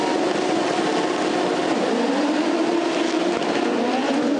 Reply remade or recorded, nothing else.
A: recorded